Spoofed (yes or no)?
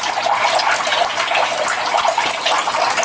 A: no